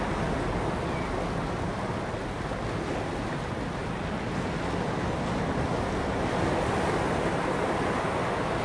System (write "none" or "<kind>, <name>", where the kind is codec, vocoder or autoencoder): none